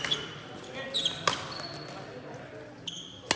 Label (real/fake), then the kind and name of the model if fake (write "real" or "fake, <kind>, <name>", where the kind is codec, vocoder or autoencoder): real